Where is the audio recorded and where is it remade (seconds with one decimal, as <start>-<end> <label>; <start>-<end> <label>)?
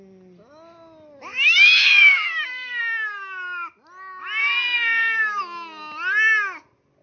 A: 0.0-1.3 recorded; 1.3-2.8 remade; 2.8-4.4 recorded; 4.4-5.4 remade; 5.4-7.0 recorded